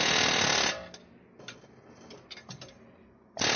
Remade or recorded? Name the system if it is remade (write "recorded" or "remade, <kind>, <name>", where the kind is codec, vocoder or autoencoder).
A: recorded